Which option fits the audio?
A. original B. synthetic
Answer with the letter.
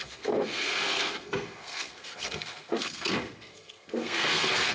B